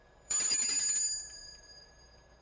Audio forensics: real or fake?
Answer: fake